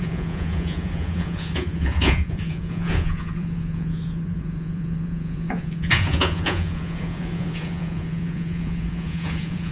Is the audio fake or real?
fake